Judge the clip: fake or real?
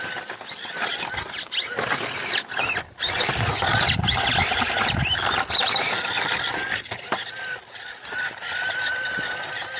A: real